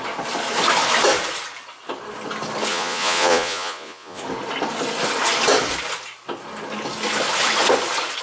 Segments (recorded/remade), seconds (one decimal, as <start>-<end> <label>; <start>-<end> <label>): 0.0-2.7 recorded; 2.7-4.2 remade; 4.2-8.2 recorded